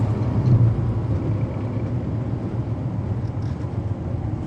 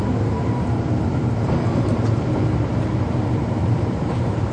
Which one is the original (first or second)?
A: first